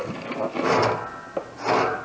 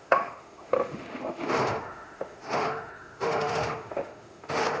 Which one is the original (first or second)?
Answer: first